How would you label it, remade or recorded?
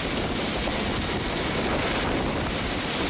recorded